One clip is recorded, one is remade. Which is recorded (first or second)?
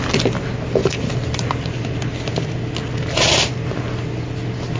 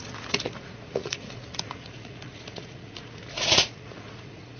first